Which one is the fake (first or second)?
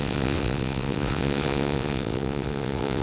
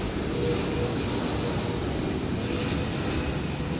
first